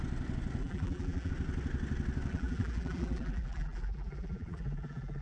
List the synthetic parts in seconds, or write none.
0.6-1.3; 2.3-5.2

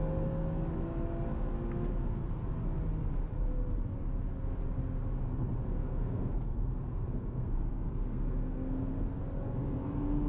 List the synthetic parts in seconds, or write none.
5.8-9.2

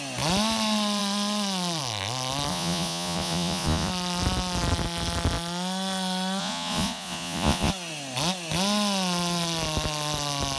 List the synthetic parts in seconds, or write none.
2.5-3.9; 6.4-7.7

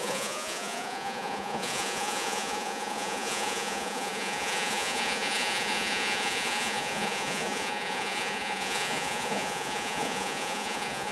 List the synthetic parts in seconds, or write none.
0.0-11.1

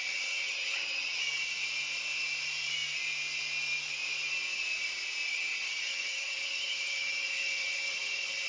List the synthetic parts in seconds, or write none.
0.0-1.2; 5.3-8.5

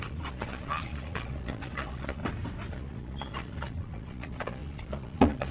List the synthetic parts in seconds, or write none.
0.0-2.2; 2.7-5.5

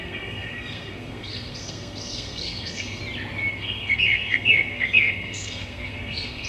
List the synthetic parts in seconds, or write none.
0.0-3.0; 3.5-6.5